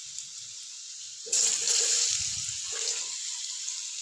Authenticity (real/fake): real